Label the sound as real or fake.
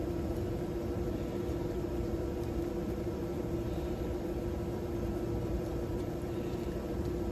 fake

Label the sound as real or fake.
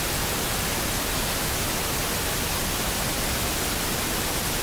real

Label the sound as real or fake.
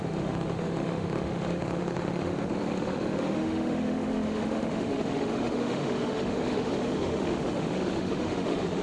fake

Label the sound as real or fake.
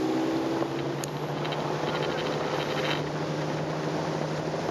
real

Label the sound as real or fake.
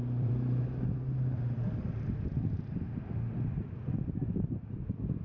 fake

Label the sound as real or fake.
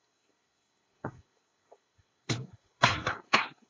fake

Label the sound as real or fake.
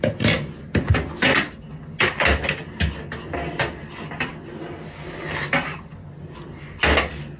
real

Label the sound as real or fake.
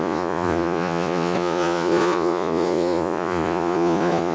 fake